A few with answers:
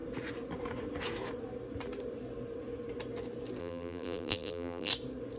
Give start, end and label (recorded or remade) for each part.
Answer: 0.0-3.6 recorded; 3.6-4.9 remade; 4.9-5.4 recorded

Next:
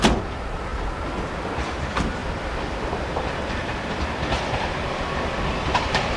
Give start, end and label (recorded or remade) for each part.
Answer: 0.0-0.7 remade; 0.7-1.8 recorded; 1.8-6.2 remade